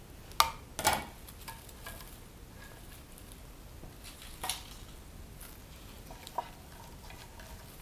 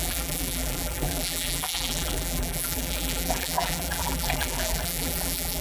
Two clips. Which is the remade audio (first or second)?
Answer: second